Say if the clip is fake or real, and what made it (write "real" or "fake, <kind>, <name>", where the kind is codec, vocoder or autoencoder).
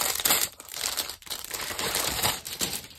fake, vocoder, BigVGAN v2